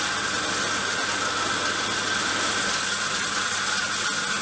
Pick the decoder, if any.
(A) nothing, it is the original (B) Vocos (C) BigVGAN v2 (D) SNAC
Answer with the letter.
A